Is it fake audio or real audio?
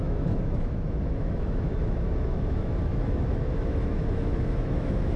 fake